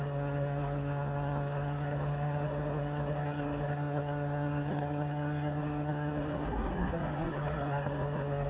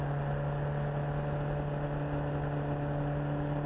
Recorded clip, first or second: second